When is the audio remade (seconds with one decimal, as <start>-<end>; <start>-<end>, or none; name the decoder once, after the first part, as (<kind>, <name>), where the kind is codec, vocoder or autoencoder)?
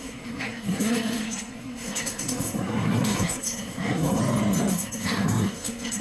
0.0-4.2 (codec, SNAC); 4.7-6.0